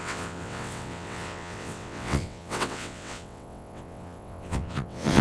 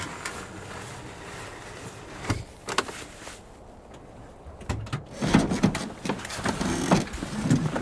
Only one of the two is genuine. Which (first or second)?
second